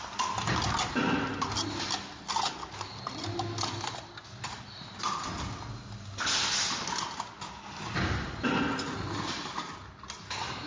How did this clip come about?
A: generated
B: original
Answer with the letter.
B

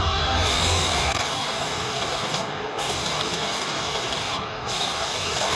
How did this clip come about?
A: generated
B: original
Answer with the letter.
A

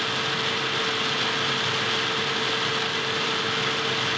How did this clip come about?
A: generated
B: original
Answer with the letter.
B